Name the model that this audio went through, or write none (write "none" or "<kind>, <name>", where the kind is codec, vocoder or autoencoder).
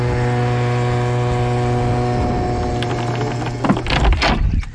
none